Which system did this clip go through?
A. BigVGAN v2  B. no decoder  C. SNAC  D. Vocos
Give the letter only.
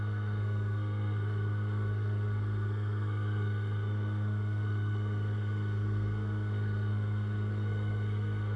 C